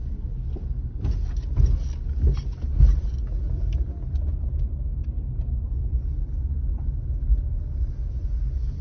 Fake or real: real